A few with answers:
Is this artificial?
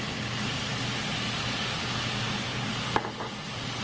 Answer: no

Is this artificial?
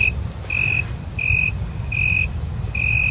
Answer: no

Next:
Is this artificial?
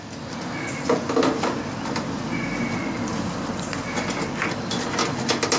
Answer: no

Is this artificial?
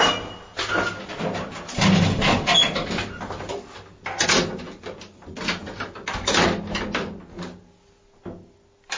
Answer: no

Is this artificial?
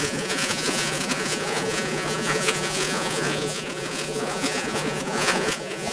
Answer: yes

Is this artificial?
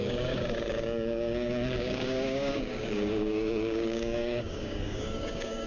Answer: yes